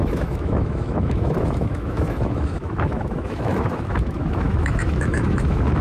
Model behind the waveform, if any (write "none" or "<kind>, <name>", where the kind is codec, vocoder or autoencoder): autoencoder, DAC-VAE